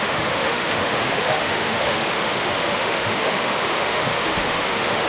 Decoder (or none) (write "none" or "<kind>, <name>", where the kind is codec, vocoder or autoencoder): autoencoder, DAC-VAE